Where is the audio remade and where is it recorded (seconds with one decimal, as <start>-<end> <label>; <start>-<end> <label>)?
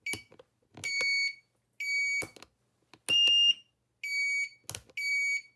0.0-5.6 recorded